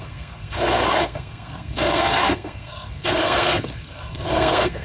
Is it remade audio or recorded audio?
remade